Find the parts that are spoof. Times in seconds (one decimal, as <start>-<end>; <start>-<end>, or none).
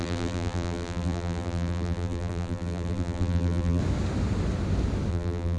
0.0-3.8; 5.1-5.6